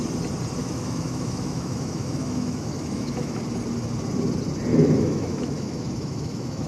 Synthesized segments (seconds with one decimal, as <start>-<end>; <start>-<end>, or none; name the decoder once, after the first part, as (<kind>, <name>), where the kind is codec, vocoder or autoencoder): 0.6-3.4 (autoencoder, DAC-VAE); 4.7-6.7